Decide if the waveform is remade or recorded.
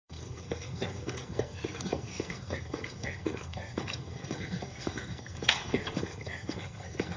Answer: remade